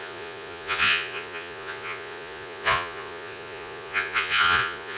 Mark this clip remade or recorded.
remade